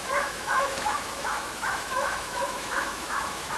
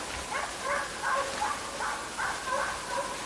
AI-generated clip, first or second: first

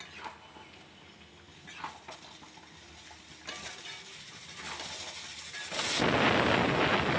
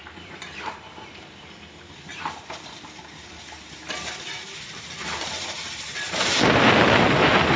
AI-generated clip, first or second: second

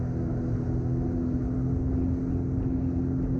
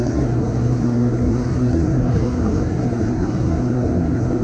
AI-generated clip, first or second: second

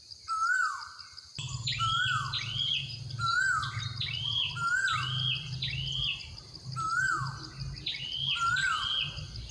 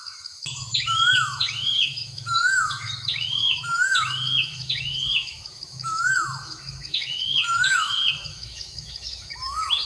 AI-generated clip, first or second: second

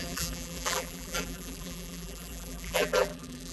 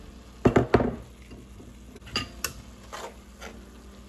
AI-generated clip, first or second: first